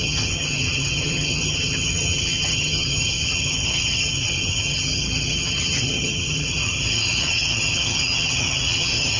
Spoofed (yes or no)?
yes